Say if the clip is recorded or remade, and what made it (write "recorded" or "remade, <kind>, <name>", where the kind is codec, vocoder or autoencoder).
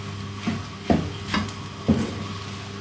recorded